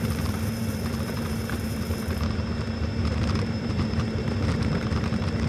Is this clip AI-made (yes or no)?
yes